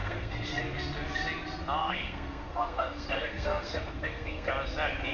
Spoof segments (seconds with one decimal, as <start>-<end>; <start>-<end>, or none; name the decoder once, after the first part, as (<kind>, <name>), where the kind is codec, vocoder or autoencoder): 0.0-0.6 (codec, SNAC); 1.8-4.5